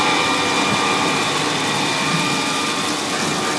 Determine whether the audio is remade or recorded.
recorded